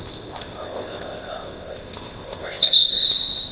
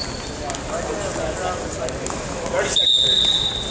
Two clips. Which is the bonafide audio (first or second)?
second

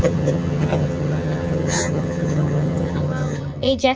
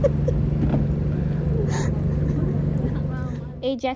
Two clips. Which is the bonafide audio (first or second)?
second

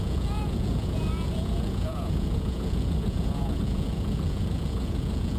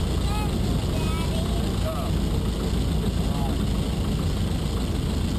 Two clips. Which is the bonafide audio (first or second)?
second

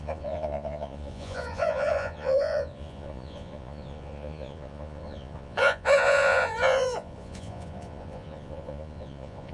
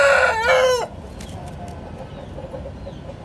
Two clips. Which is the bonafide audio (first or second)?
second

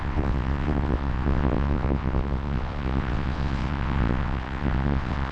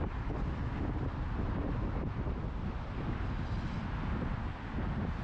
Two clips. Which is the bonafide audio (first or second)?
second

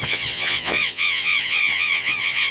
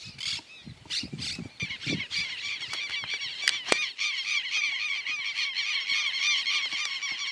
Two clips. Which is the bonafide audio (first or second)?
second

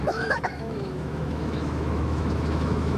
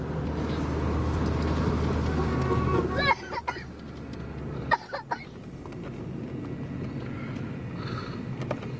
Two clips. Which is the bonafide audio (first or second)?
second